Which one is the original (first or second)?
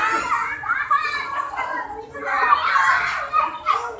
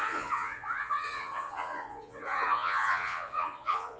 first